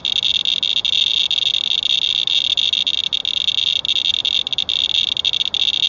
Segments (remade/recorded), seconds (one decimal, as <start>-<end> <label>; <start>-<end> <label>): 0.0-5.9 recorded